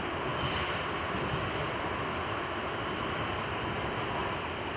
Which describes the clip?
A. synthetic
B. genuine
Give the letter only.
B